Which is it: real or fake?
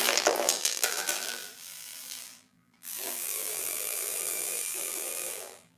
fake